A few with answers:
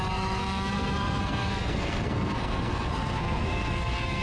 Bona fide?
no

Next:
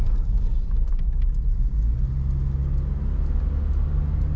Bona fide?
yes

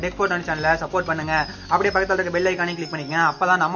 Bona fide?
yes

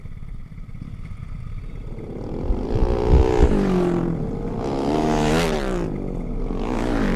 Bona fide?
yes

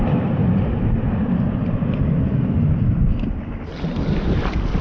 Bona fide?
yes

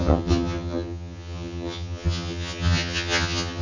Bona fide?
no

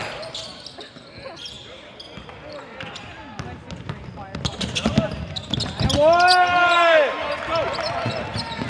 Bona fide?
yes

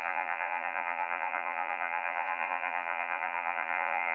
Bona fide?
no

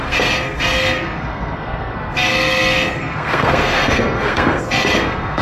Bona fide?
no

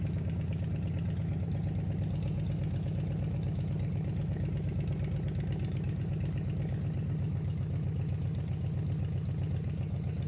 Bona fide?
yes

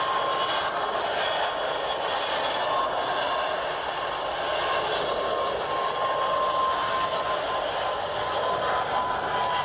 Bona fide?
yes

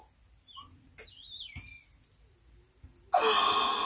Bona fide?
yes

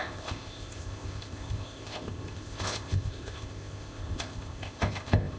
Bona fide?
no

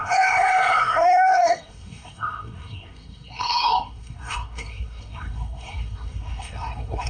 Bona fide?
no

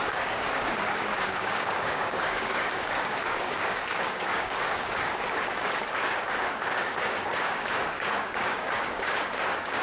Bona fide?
no